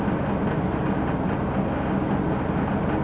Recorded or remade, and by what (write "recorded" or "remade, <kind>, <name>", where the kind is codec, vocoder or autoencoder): recorded